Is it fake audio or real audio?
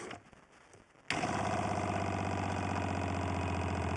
real